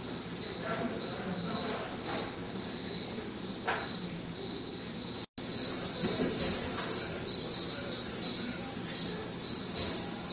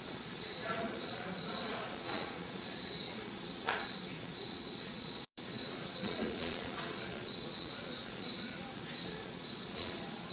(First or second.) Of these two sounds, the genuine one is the first